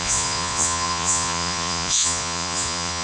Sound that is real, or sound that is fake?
fake